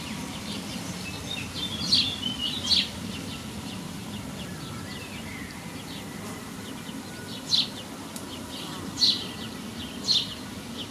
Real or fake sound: real